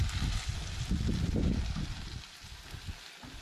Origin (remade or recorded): recorded